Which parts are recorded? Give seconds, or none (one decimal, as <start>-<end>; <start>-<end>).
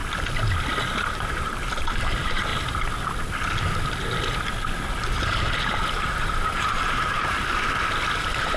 0.0-1.1; 2.5-4.9; 7.4-8.2